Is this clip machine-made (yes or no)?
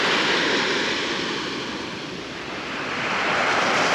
yes